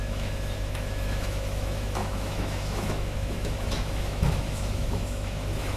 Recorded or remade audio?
remade